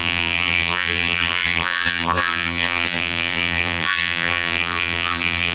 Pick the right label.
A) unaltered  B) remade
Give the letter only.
B